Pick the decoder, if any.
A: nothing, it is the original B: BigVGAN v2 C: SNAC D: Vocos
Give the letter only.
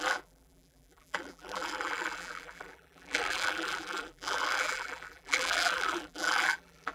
B